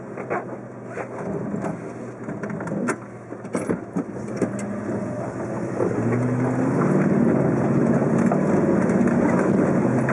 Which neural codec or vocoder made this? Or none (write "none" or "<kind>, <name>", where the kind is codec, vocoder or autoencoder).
none